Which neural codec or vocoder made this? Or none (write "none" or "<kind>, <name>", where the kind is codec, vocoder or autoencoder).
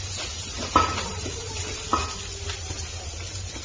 none